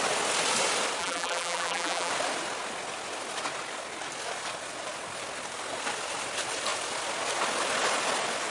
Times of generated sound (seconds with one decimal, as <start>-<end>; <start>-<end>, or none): 1.0-2.1